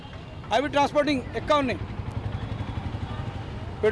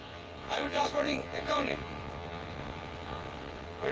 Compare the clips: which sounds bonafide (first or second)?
first